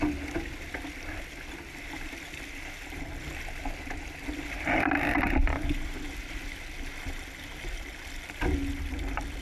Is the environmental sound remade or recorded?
recorded